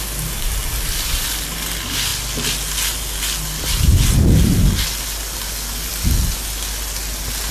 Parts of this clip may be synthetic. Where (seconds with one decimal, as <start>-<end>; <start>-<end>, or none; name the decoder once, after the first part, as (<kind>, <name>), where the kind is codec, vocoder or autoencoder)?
none